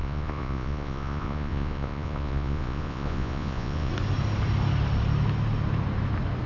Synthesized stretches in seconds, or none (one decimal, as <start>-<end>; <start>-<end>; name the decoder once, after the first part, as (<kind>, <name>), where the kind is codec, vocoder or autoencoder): 0.0-3.9 (vocoder, Vocos)